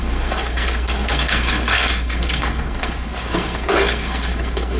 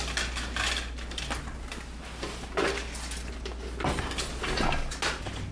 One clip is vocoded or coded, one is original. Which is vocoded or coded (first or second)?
first